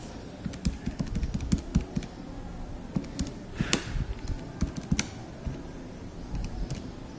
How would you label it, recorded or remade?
recorded